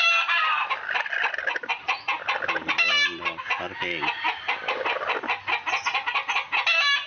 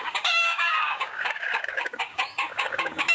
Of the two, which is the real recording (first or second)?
first